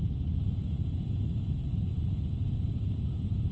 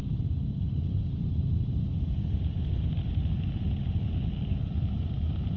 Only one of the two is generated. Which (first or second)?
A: first